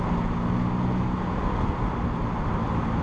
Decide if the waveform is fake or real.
real